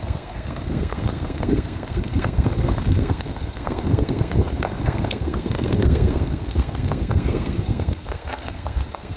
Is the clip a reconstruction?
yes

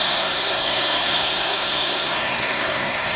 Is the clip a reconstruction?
yes